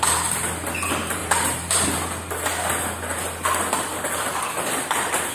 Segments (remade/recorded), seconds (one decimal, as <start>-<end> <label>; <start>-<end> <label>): 0.0-1.2 recorded; 1.2-1.9 remade; 1.9-5.3 recorded